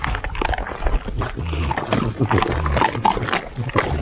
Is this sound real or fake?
real